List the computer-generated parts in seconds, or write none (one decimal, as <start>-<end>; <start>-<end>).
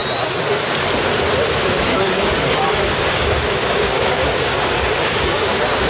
1.9-5.4